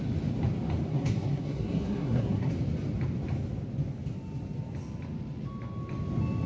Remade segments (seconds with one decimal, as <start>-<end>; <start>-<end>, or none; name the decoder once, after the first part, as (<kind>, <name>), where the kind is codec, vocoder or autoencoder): 0.9-2.5 (codec, SNAC)